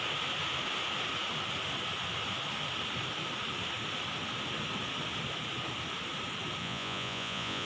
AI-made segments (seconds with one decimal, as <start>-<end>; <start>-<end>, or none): 6.6-7.7